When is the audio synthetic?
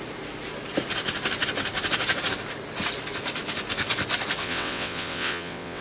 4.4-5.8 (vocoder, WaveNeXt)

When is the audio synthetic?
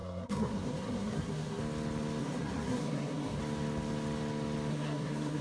0.0-1.6 (codec, SNAC); 2.2-3.4; 4.7-5.4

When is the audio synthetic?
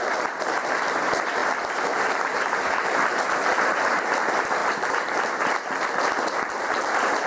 0.0-7.3 (vocoder, BigVGAN v2)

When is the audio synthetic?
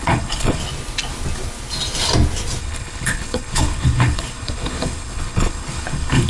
0.0-0.6 (codec, HILCodec); 2.6-6.3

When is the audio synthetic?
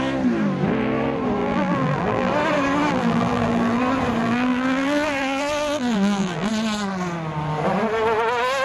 1.4-2.3 (vocoder, BigVGAN v2); 2.9-3.8; 4.2-6.5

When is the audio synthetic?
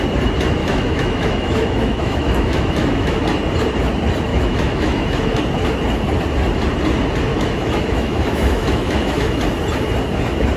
0.6-3.2 (autoencoder, DAC-VAE); 4.3-5.4; 7.3-9.4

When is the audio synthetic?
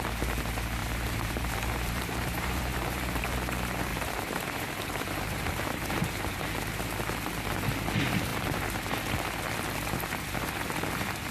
0.8-3.2 (vocoder, BigVGAN v2); 3.9-6.4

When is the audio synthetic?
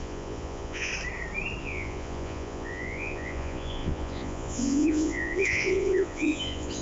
0.0-0.9 (vocoder, Vocos); 1.6-6.8